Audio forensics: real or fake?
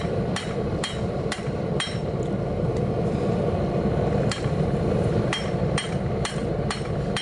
fake